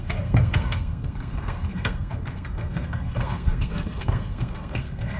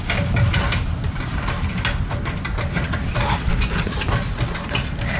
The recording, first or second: second